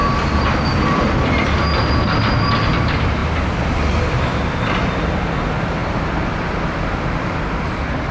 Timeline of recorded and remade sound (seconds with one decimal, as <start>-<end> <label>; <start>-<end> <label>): 0.0-1.4 remade; 1.4-5.8 recorded; 5.8-7.4 remade; 7.4-8.1 recorded

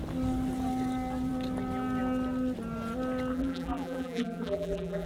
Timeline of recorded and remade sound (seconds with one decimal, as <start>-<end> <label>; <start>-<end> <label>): 0.0-3.3 recorded; 3.3-5.1 remade

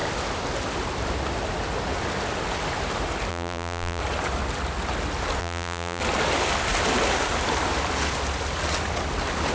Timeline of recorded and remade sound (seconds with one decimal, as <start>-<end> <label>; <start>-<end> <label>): 0.0-3.3 recorded; 3.3-4.0 remade; 4.0-5.4 recorded; 5.4-6.0 remade; 6.0-9.5 recorded